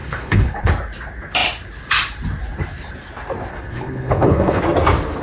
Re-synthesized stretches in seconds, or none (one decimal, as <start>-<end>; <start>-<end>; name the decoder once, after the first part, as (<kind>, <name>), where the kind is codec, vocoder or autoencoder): 0.0-0.7 (codec, HILCodec); 3.5-4.6